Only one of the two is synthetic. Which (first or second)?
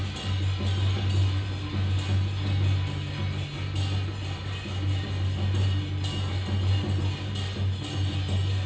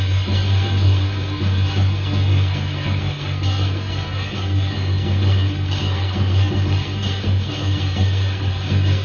second